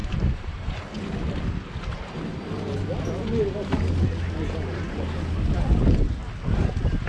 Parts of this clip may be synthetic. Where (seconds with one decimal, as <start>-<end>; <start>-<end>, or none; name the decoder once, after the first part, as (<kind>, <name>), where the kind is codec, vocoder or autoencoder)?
0.0-0.8 (vocoder, BigVGAN v2)